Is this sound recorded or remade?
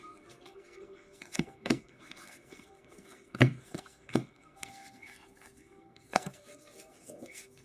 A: remade